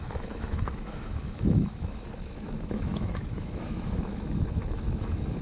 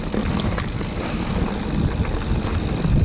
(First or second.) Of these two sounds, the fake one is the first